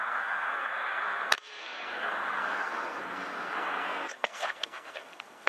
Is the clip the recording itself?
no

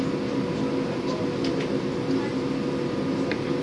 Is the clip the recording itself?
yes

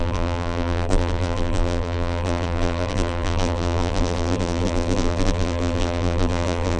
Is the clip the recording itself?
no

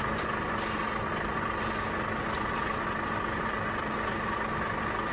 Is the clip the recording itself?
yes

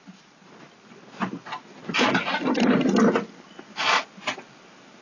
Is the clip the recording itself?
yes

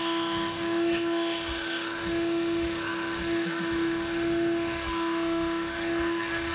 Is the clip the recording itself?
no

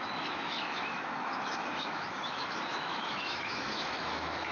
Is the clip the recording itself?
no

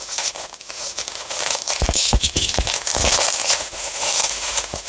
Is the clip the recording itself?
no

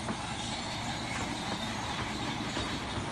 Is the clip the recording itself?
no